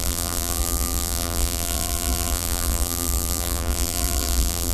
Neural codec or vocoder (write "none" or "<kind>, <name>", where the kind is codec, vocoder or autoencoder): vocoder, BigVGAN v2